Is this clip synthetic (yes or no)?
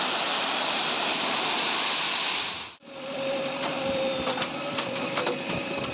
yes